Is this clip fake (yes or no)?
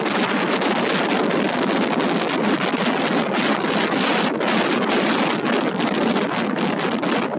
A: no